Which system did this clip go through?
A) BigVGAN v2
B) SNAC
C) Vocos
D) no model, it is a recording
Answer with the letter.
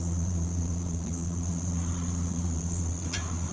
C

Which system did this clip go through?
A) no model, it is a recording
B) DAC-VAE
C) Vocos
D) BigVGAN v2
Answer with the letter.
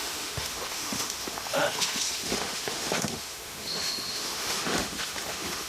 B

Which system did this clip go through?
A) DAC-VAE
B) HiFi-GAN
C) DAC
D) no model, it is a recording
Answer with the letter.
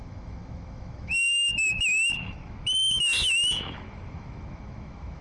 A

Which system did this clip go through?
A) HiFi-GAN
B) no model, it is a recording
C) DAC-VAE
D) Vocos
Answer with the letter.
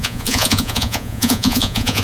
D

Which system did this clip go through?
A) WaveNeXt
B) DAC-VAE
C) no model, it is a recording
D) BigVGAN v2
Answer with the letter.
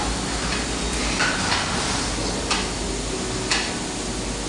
C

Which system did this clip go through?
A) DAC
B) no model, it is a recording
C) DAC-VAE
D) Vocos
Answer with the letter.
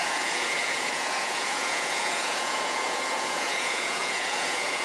D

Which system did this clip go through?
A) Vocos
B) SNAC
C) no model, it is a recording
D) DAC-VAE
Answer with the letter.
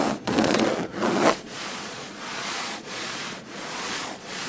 A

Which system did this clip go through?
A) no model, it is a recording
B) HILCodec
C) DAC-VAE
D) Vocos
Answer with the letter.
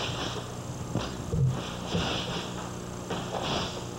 A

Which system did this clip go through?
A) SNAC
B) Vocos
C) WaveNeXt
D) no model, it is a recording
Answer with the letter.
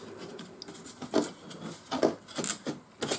D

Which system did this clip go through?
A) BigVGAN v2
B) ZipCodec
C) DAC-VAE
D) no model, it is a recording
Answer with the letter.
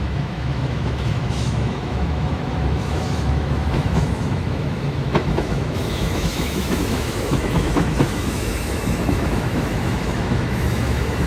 C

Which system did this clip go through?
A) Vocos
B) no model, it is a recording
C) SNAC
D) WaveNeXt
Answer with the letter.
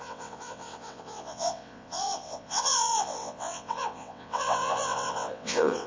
D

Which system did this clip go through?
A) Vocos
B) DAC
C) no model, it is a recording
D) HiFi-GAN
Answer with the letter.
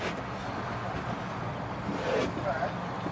C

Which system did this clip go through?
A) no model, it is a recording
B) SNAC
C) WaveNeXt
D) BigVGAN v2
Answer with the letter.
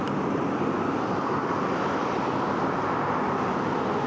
A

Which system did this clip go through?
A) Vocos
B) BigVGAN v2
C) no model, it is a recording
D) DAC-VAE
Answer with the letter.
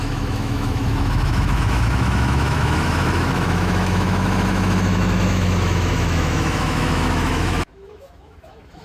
D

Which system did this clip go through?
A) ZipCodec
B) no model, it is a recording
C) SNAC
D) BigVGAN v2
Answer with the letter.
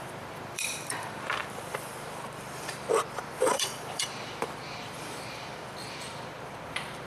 D